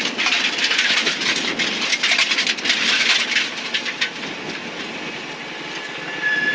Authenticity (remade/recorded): recorded